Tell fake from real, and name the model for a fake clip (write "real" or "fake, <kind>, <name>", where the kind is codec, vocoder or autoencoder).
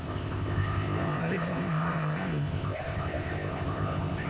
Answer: fake, codec, ZipCodec